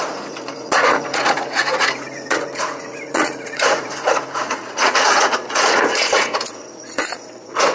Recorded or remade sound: remade